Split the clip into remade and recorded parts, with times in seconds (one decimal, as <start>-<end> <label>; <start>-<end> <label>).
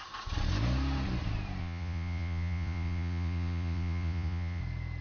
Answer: 0.0-1.6 recorded; 1.6-4.6 remade; 4.6-5.0 recorded